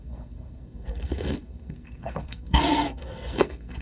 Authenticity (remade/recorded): remade